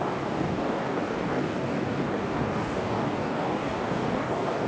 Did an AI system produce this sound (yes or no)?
yes